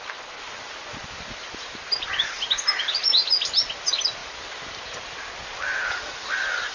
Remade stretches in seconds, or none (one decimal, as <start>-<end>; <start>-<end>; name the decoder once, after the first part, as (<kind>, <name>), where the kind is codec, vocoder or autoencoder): none